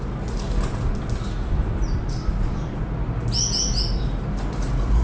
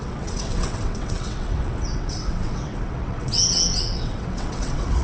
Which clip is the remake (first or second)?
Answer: second